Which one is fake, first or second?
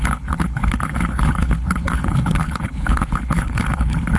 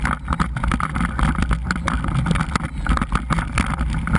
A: first